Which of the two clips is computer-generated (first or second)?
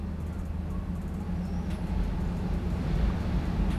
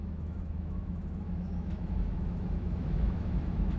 second